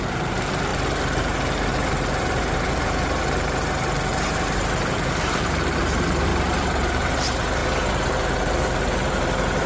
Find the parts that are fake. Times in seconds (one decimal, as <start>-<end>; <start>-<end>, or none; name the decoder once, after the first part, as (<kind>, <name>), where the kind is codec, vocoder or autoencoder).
0.0-6.3 (vocoder, BigVGAN v2); 6.8-7.6; 8.1-9.7